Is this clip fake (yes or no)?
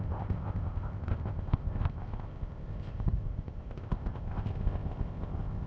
yes